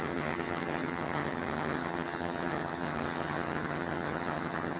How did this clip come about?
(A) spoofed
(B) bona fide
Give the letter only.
A